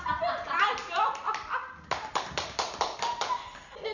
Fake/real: real